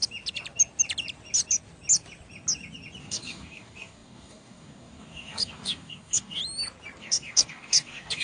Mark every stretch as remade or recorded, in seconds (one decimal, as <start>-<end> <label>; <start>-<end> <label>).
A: 0.0-3.0 recorded; 3.0-6.4 remade; 6.4-7.0 recorded; 7.0-8.2 remade